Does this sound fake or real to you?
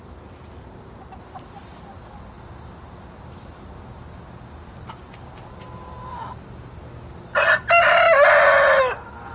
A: real